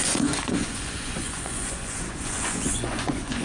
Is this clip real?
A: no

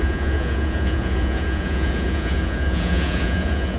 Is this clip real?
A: no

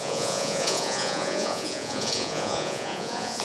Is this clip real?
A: no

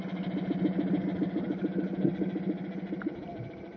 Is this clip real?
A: yes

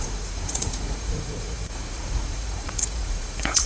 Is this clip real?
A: no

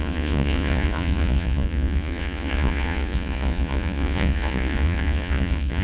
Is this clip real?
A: no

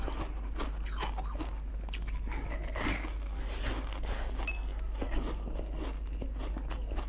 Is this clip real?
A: yes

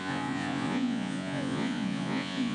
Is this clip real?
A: no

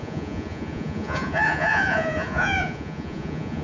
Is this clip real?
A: no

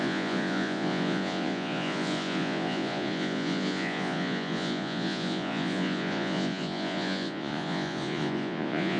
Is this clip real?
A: no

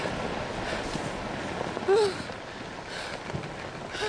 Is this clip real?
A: yes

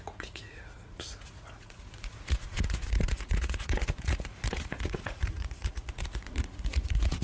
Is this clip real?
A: no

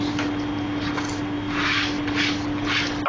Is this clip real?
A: yes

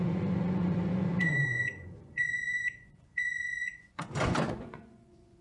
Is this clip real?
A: no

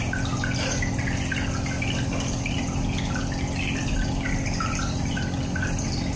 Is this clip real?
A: yes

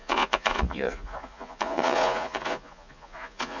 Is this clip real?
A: no